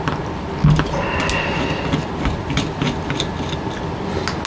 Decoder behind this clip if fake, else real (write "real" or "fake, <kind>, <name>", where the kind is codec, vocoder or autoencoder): real